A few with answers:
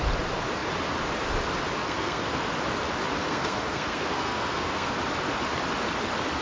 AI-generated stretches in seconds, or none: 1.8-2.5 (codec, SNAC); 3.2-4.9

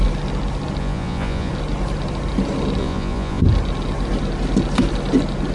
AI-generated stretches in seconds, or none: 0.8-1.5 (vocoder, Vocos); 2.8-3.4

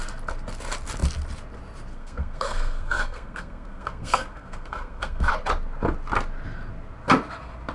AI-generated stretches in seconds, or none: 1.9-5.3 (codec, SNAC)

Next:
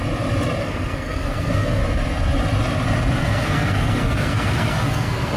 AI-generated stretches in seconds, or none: 0.6-1.8 (codec, SNAC); 3.2-5.4

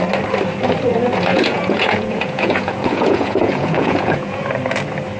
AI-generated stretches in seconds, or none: 1.3-4.4 (vocoder, Vocos)

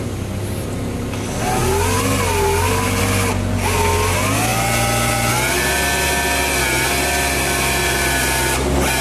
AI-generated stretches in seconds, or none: none